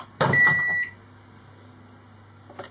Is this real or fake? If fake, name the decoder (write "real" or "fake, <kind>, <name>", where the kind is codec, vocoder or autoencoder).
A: real